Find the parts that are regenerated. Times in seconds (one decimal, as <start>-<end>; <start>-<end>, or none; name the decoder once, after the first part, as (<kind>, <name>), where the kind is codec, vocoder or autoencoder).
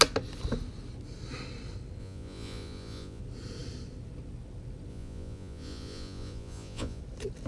2.0-3.2 (vocoder, Vocos); 4.9-7.0